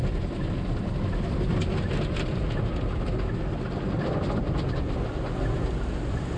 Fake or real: real